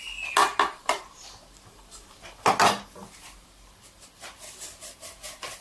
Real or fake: real